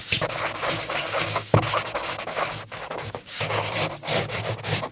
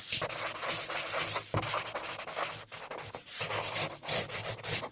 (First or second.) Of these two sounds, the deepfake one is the first